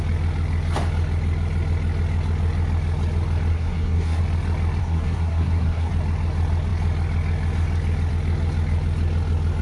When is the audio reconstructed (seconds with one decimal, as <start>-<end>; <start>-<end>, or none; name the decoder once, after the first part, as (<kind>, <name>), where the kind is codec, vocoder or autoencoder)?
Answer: 3.5-4.2 (codec, SNAC); 4.8-5.9